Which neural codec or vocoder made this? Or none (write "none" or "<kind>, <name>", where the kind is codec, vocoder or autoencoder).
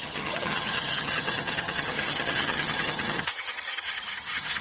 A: vocoder, HiFi-GAN